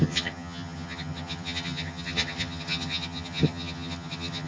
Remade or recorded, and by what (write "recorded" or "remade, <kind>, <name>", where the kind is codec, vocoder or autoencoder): remade, vocoder, HiFi-GAN